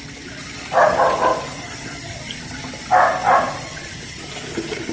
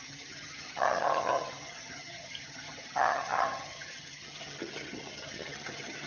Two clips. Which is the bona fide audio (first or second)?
first